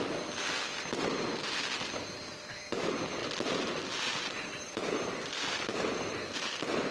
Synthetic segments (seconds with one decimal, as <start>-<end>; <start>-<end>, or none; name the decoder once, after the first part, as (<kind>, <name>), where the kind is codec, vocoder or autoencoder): 3.2-6.9 (vocoder, BigVGAN v2)

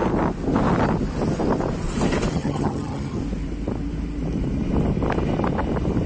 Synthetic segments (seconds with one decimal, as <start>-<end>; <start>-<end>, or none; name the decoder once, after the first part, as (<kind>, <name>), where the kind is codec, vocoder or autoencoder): 2.3-3.2 (vocoder, HiFi-GAN)

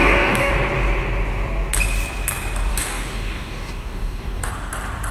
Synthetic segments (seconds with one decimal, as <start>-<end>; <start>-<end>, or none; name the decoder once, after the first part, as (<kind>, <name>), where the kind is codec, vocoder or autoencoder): 0.0-0.5 (codec, DAC); 2.7-4.5

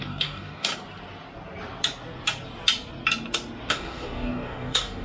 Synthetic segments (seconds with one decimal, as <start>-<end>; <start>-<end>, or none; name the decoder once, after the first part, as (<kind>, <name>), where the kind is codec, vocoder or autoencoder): 0.0-0.7 (codec, DAC); 3.7-5.0

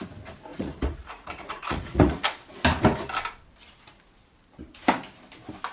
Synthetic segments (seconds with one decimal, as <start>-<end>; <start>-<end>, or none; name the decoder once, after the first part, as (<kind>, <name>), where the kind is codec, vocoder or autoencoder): 0.5-2.2 (vocoder, Vocos)

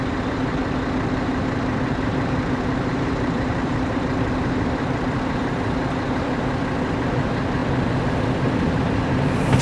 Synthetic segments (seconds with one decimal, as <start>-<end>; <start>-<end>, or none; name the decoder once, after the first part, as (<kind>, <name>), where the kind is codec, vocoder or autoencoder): 2.9-3.9 (vocoder, BigVGAN v2)

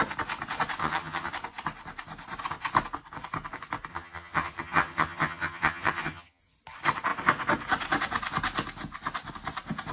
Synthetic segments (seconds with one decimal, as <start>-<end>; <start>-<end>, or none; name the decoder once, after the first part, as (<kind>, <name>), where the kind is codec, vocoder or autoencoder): 0.8-1.3 (vocoder, HiFi-GAN); 3.9-6.4